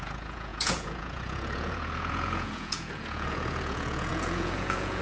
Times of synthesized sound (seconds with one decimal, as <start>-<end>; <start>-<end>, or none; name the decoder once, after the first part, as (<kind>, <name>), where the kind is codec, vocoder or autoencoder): 0.0-5.0 (vocoder, Vocos)